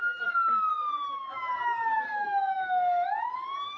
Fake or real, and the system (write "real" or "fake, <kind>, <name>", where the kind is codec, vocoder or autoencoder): real